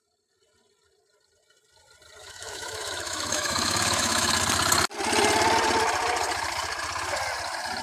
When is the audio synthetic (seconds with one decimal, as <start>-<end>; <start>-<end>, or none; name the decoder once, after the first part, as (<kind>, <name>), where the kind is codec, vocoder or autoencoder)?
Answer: 2.2-4.3 (autoencoder, DAC-VAE)